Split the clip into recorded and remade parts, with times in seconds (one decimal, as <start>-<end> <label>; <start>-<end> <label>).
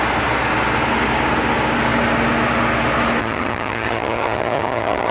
0.0-3.2 recorded; 3.2-5.1 remade